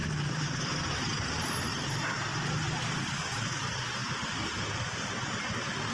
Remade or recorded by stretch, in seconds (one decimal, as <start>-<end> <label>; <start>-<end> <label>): 0.0-5.9 recorded